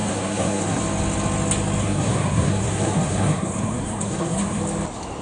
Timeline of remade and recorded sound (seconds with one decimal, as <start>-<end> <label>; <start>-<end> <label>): 0.0-0.8 remade; 0.8-1.8 recorded; 1.8-4.6 remade; 4.6-5.2 recorded